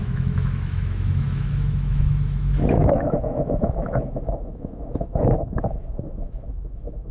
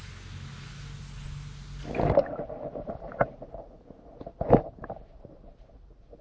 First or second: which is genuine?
second